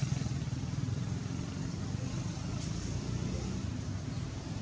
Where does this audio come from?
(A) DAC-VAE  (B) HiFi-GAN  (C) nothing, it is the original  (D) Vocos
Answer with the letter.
C